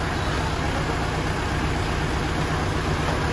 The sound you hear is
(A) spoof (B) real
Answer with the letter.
B